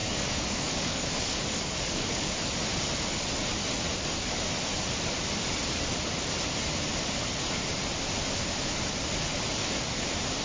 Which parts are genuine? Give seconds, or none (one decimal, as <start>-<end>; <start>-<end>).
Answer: 2.3-10.4

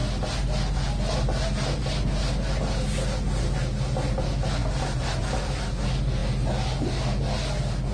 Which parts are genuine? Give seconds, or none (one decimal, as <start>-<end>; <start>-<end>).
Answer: 0.0-7.9

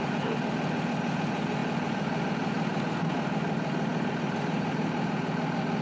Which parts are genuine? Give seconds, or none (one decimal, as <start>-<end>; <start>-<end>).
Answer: 0.0-5.8

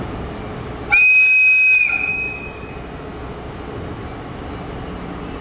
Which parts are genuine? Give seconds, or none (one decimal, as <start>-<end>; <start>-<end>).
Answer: 0.0-2.1; 2.7-5.4

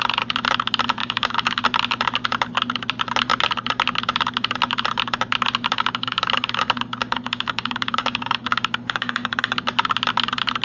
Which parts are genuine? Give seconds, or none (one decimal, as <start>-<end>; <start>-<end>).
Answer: 0.0-1.0; 1.6-5.7; 9.3-10.6

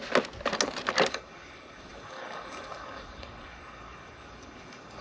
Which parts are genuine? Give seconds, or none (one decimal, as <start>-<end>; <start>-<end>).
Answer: 0.0-1.1

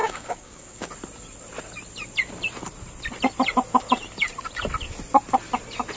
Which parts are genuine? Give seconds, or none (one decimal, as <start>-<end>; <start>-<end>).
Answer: 0.9-6.0